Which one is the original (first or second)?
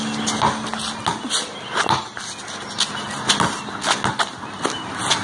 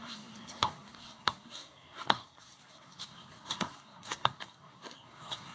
first